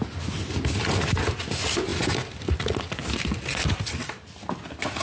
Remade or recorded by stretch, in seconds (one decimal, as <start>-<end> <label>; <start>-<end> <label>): 0.0-5.0 recorded